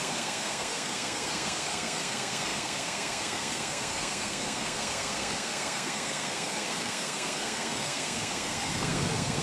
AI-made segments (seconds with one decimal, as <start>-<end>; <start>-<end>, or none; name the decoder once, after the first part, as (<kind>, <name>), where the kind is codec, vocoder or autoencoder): 0.0-9.4 (codec, SNAC)